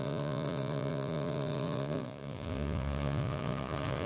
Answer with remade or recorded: remade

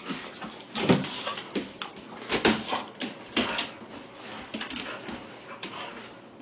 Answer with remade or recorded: recorded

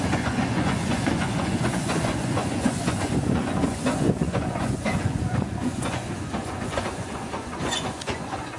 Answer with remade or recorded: remade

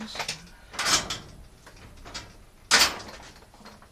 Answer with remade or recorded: recorded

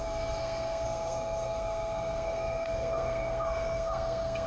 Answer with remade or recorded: remade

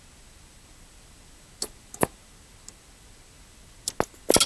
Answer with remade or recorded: recorded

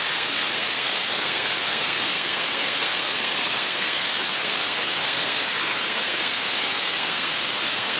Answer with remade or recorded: remade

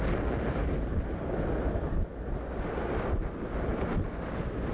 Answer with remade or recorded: recorded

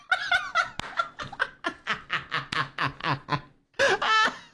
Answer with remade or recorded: recorded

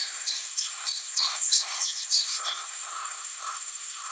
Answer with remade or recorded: remade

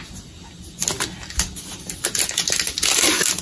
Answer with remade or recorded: recorded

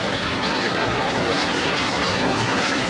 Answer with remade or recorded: remade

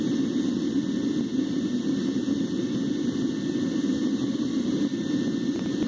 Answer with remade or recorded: recorded